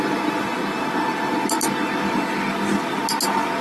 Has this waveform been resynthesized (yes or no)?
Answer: no